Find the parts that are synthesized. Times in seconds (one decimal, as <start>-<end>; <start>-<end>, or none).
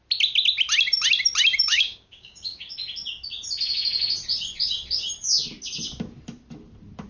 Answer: 1.7-2.7